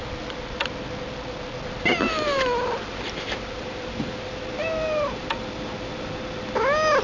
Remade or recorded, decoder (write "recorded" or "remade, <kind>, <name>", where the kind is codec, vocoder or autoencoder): recorded